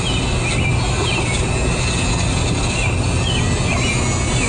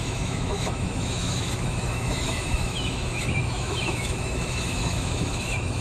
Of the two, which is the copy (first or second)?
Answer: second